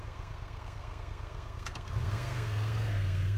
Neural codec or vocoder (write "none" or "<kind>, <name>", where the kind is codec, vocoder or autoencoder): codec, SNAC